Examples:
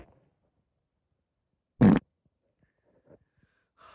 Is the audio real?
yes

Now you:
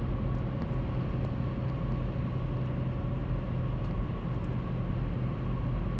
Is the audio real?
yes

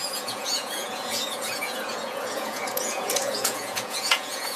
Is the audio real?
no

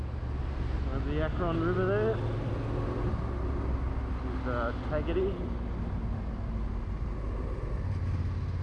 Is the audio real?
yes